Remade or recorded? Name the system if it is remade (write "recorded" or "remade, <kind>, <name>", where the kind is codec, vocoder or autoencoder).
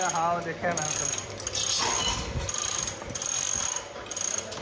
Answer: recorded